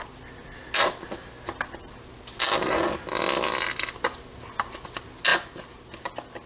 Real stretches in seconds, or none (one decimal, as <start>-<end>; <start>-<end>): 0.0-6.5